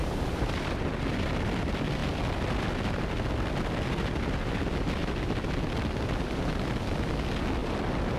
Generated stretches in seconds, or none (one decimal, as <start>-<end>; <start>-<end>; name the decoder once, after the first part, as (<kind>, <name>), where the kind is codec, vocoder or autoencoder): 0.0-1.6 (vocoder, BigVGAN v2); 7.6-8.2